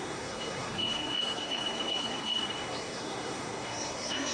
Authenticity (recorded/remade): remade